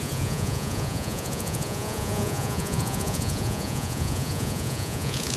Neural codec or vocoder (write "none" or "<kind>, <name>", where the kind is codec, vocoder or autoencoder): vocoder, Vocos